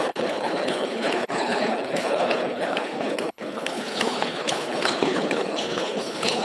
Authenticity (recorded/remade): remade